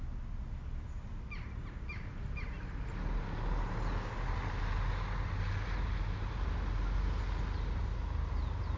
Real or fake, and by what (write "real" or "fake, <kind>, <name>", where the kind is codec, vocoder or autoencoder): real